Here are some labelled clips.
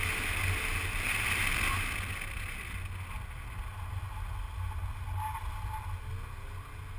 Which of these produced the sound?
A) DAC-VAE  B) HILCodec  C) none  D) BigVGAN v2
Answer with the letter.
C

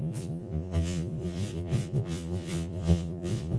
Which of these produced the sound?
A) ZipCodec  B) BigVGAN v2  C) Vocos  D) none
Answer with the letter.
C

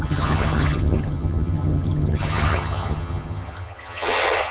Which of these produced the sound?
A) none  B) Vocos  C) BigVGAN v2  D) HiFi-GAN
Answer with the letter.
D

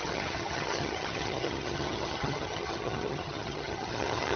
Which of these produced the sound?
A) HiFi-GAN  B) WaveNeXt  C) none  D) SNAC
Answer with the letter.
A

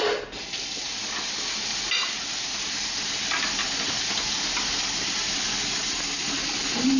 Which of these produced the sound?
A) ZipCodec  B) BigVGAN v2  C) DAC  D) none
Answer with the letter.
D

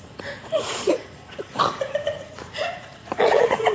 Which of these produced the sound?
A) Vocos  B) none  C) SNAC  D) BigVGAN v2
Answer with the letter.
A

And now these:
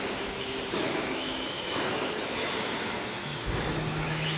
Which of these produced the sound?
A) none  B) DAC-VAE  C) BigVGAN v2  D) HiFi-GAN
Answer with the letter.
B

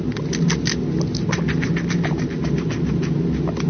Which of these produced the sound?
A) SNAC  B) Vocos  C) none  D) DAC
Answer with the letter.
C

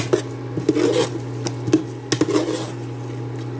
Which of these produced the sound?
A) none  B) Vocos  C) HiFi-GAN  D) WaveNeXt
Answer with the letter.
A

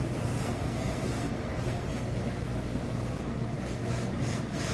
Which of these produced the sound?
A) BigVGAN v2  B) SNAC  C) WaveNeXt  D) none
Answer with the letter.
B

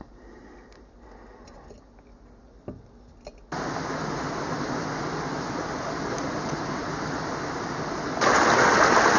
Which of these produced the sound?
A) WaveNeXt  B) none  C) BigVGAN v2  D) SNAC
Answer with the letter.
B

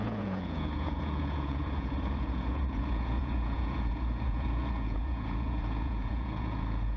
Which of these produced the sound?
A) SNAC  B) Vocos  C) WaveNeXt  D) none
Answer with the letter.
B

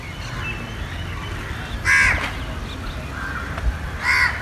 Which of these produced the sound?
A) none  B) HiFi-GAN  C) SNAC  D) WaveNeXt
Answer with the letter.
A